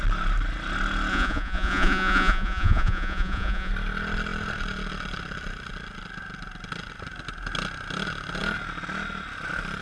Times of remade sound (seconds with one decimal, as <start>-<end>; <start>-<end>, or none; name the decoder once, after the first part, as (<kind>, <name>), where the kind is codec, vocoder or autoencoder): 1.1-3.7 (vocoder, Vocos)